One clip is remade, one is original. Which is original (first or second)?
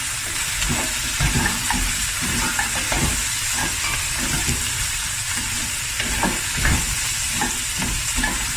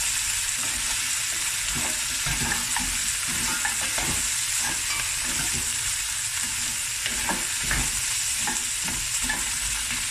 second